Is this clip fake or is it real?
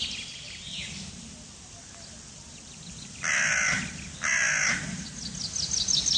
real